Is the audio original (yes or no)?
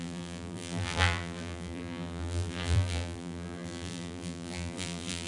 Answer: no